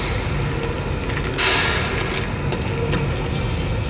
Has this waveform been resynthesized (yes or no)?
no